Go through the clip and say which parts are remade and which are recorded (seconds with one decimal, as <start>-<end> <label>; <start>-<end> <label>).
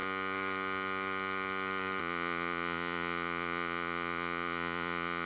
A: 0.0-2.0 recorded; 2.0-5.3 remade